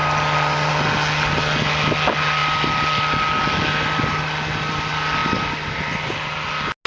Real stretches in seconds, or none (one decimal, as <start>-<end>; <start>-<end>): 0.0-6.9